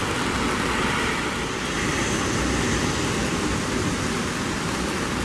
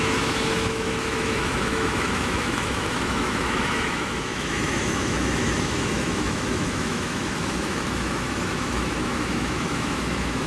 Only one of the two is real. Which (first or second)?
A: first